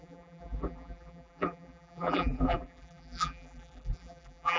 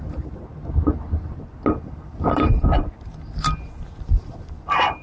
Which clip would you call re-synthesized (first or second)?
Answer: first